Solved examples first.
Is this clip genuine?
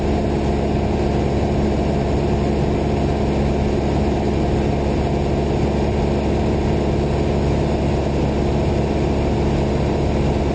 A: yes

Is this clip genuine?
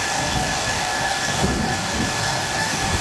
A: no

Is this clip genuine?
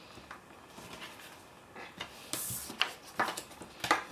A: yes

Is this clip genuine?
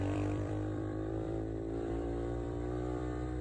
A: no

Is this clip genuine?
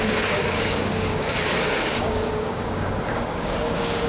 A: no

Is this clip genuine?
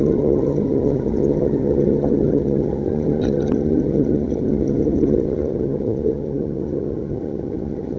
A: no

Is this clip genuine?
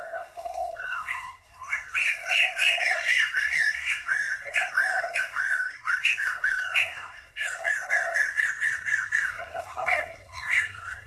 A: no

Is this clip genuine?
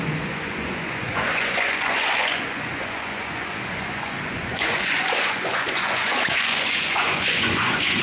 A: no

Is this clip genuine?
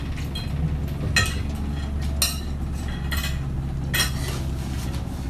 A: yes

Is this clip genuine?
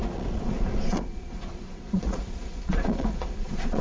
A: no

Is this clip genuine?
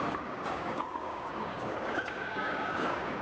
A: no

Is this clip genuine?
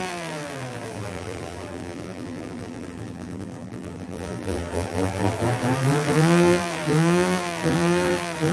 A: no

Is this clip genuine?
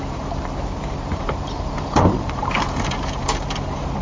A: no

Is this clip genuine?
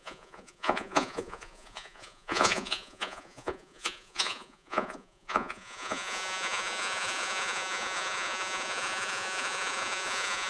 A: no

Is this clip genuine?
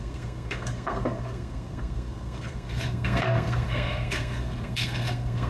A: no